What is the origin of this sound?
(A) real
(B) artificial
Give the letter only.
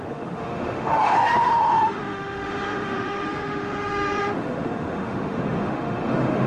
B